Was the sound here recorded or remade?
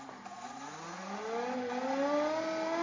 recorded